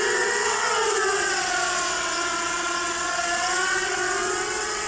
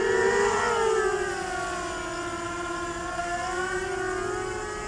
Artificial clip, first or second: first